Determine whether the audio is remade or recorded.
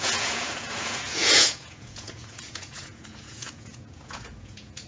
remade